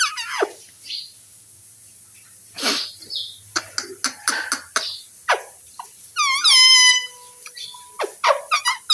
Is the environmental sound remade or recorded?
recorded